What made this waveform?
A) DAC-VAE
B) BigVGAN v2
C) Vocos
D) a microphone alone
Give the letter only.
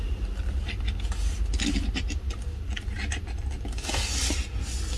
D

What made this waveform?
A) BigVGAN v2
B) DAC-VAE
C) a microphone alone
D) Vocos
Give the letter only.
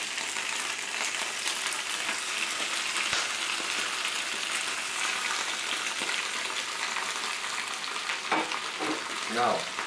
C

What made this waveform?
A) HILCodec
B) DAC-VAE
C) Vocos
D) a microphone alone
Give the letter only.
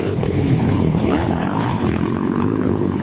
A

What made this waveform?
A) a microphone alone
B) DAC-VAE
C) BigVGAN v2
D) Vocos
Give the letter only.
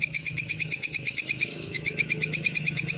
B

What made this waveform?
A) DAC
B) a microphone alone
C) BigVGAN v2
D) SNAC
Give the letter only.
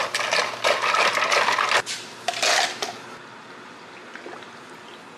B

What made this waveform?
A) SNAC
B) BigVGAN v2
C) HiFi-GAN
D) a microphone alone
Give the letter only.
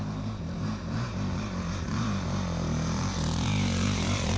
B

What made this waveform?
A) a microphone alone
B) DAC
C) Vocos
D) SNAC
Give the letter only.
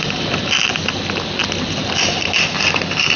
A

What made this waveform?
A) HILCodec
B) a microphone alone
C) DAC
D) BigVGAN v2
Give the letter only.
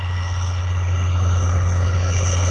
A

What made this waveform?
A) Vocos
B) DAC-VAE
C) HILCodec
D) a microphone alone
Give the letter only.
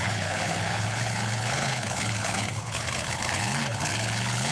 C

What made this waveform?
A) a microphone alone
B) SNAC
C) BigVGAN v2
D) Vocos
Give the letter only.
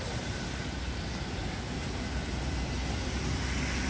A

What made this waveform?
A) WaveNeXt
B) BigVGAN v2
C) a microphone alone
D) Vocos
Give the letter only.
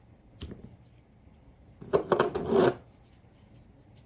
C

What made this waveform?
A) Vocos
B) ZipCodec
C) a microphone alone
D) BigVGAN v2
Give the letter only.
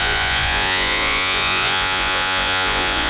A